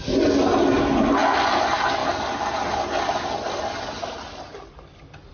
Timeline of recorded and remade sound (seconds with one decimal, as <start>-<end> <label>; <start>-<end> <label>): 0.0-5.3 recorded